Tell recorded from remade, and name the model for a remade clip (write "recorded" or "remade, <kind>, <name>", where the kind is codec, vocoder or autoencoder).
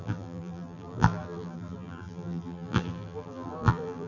remade, vocoder, BigVGAN v2